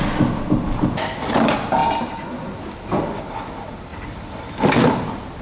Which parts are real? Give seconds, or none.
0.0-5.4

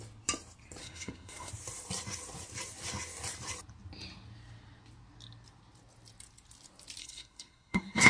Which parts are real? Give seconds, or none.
0.0-0.8; 1.5-7.0

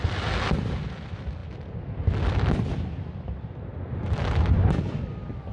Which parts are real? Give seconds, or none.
0.0-5.5

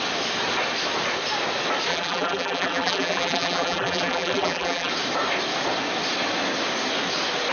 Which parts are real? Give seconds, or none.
0.0-1.9; 4.9-7.5

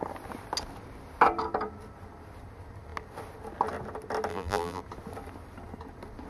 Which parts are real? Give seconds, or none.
0.0-4.3; 4.8-6.3

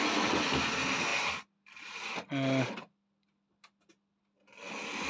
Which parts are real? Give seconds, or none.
0.0-5.1

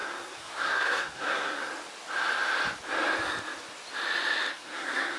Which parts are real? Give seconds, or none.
1.7-4.5

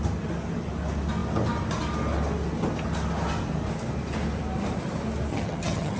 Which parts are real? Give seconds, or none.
0.0-5.3